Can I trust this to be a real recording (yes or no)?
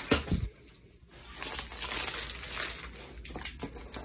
yes